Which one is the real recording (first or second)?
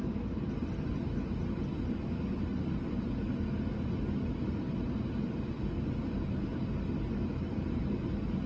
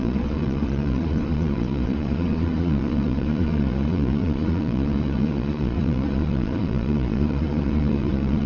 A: first